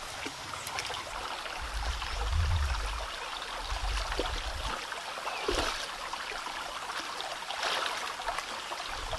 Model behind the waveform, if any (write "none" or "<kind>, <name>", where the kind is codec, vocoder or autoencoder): none